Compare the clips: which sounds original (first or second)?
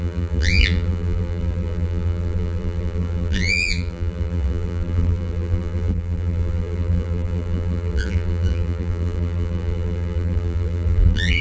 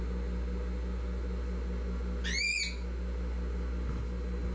second